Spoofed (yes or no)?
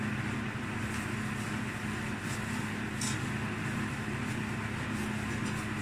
no